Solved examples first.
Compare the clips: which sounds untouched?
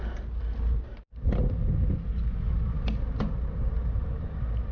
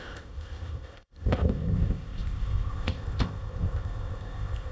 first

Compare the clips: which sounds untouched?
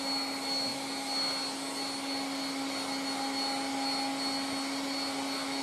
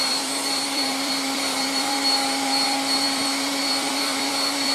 first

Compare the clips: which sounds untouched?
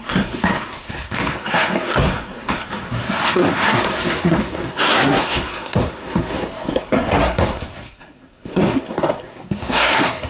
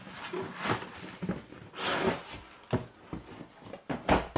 second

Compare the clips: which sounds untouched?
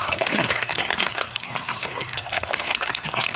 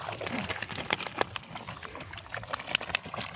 second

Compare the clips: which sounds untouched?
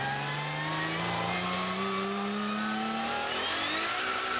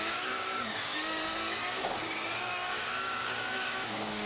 first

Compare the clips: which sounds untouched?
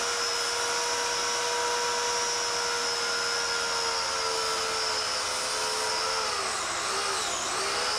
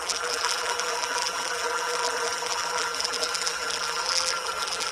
first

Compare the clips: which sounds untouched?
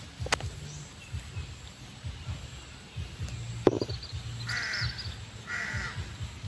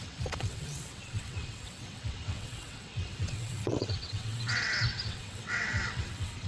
first